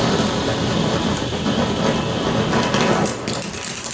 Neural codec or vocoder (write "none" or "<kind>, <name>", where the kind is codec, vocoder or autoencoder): none